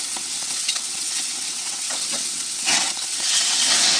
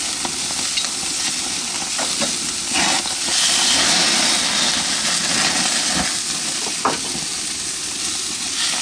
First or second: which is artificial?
first